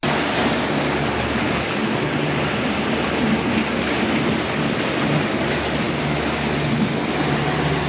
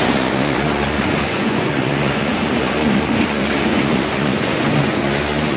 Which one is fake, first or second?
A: second